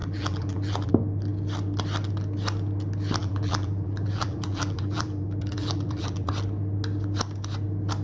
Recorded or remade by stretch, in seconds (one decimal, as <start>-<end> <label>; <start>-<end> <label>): 0.0-0.9 remade; 0.9-3.2 recorded; 3.2-6.3 remade; 6.3-8.0 recorded

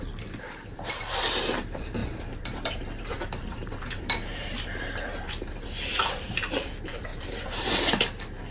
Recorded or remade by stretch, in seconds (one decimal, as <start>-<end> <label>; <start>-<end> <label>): 0.0-8.5 remade

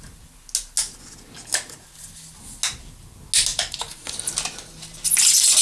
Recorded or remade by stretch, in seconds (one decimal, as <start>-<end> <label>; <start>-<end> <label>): 0.0-3.5 recorded; 3.5-4.2 remade; 4.2-5.6 recorded

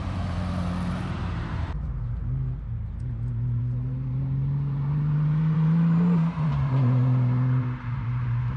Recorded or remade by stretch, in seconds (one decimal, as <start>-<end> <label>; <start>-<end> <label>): 0.0-2.2 remade; 2.2-3.6 recorded; 3.6-8.6 remade

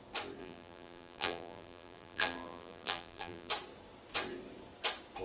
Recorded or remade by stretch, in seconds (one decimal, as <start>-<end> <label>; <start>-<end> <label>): 0.0-0.4 recorded; 0.4-3.5 remade; 3.5-5.2 recorded

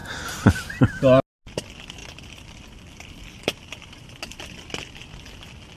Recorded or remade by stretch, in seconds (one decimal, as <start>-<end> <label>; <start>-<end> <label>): 0.0-0.9 remade; 0.9-2.0 recorded; 2.0-4.0 remade; 4.0-5.8 recorded